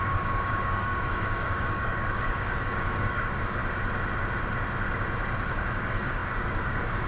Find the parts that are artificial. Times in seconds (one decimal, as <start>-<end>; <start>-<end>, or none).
0.0-3.6; 5.5-7.1